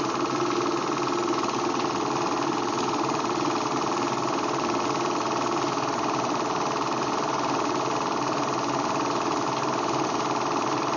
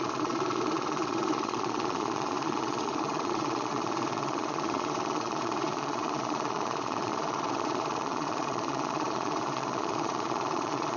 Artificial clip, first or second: second